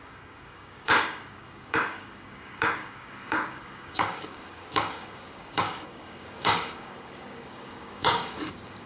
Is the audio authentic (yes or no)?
no